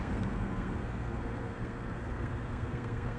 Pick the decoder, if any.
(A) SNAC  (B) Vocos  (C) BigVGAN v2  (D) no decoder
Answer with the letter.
A